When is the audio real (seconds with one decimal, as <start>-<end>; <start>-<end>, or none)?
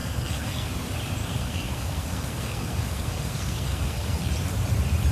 0.7-1.2; 4.3-5.1